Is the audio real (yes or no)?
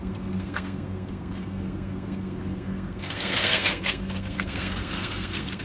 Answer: no